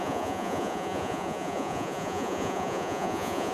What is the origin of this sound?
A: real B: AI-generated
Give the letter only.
B